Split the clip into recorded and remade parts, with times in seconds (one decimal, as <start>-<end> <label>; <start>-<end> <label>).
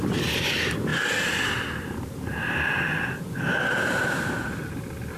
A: 0.0-5.2 recorded